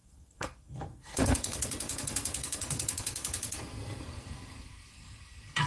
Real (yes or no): no